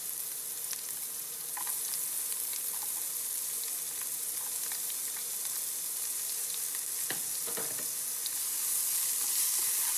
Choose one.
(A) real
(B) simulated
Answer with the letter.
A